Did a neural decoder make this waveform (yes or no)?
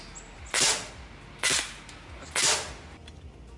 no